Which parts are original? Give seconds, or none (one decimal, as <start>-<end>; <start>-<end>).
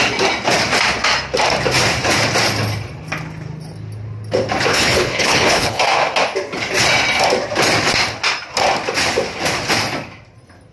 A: 0.0-4.7; 5.8-10.7